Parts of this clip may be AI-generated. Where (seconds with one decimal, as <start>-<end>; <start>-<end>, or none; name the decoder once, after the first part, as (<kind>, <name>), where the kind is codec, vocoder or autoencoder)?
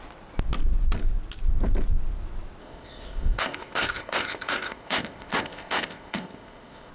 2.6-6.9 (codec, ZipCodec)